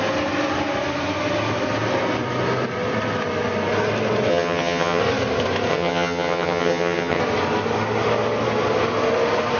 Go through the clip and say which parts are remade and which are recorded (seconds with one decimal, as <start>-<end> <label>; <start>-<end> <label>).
0.0-4.3 recorded; 4.3-5.0 remade; 5.0-5.7 recorded; 5.7-7.2 remade; 7.2-9.6 recorded